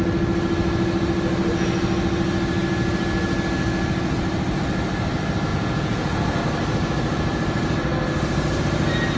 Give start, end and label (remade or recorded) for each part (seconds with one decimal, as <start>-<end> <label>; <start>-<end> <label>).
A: 0.0-5.5 recorded; 5.5-6.4 remade; 6.4-9.2 recorded